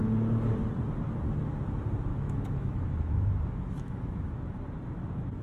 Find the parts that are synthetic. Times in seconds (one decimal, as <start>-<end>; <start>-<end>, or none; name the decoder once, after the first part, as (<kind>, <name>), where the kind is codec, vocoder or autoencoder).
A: 2.1-4.5 (autoencoder, DAC-VAE)